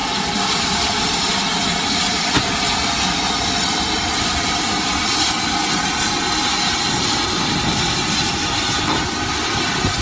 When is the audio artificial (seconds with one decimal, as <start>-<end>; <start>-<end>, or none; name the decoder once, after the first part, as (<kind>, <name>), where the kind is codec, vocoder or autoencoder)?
0.0-4.6 (vocoder, BigVGAN v2)

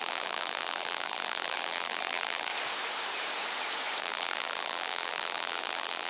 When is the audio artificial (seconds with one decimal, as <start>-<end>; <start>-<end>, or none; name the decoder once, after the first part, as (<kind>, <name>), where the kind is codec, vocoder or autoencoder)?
0.0-2.5 (vocoder, BigVGAN v2); 4.0-6.1

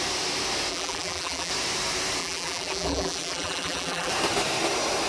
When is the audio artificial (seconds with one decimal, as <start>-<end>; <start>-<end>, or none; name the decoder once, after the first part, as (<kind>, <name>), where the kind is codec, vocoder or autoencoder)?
0.7-1.5 (vocoder, BigVGAN v2); 2.2-4.1

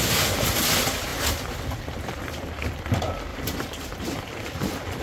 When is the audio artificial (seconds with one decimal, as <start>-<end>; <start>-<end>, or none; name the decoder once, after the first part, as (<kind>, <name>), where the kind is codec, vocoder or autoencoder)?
3.3-4.2 (vocoder, BigVGAN v2)

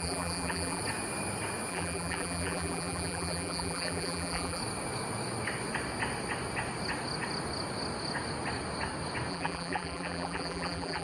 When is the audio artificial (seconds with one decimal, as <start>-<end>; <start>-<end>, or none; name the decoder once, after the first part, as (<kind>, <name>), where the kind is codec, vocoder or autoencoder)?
0.0-0.8 (vocoder, BigVGAN v2); 1.7-4.6; 9.3-11.0

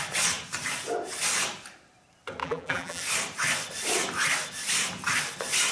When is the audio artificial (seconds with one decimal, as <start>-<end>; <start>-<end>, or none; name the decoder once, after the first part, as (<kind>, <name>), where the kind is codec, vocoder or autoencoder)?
2.4-3.0 (vocoder, BigVGAN v2)

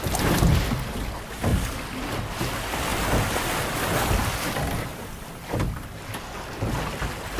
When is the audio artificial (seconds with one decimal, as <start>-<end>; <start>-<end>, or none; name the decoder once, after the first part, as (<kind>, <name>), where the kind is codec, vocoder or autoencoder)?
none